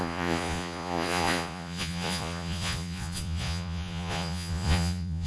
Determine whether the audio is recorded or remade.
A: remade